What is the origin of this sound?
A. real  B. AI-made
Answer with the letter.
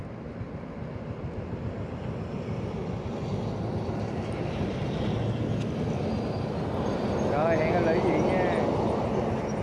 A